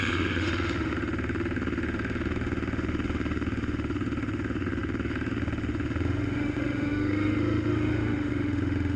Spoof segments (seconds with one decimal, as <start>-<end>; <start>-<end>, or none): 0.0-9.0